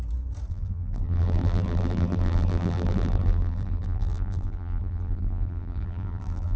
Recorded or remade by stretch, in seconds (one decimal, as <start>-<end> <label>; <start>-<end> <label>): 0.0-0.5 recorded; 0.5-6.6 remade